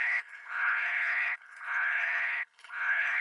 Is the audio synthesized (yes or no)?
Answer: yes